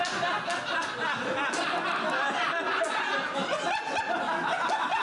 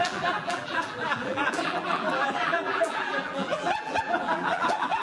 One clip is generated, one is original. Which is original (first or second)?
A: first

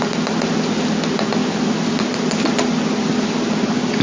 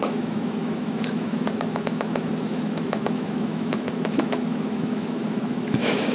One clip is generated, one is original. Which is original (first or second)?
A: first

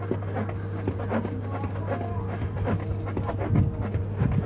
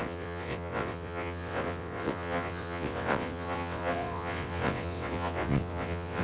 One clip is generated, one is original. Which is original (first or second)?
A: first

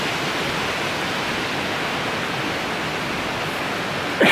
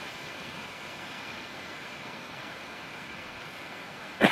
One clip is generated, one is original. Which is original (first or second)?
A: first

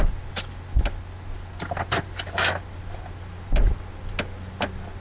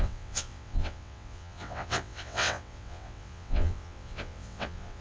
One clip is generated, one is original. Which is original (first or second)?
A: first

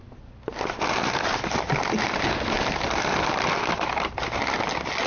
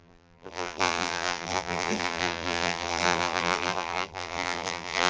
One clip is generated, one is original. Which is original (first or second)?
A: first